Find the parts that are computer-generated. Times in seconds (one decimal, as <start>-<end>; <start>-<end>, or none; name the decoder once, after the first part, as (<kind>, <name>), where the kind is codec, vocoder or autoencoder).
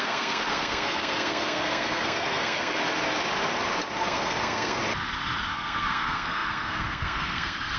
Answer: 0.0-2.8 (codec, SNAC); 4.0-4.8; 5.4-7.8